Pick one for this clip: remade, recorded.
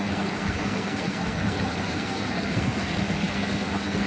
remade